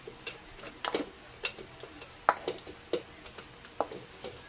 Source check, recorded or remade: recorded